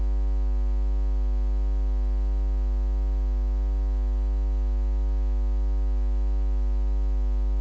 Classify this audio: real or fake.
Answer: real